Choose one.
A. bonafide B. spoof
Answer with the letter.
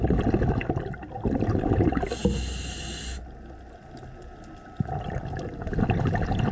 A